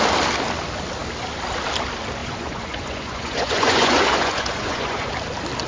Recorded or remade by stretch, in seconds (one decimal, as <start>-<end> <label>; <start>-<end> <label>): 0.0-2.2 recorded; 2.2-5.1 remade; 5.1-5.7 recorded